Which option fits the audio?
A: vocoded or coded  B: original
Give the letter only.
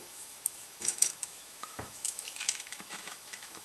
A